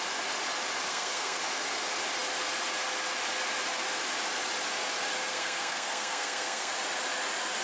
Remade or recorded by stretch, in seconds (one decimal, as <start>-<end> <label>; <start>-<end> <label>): 0.0-0.9 recorded; 0.9-1.4 remade; 1.4-5.3 recorded; 5.3-6.7 remade; 6.7-7.6 recorded